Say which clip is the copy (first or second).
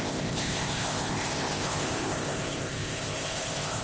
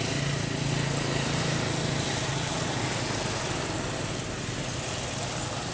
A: first